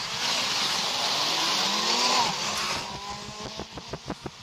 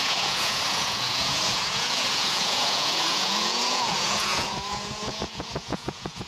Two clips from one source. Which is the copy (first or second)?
second